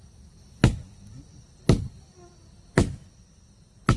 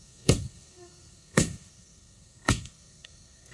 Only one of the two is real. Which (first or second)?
first